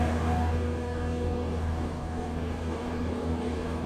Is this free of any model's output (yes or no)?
no